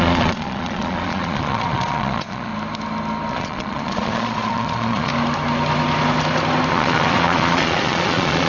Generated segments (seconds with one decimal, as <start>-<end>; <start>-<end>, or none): 0.0-2.5; 3.3-5.1; 6.7-8.5